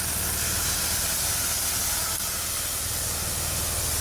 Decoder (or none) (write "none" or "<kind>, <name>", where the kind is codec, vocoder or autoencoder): none